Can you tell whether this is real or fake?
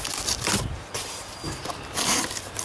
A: real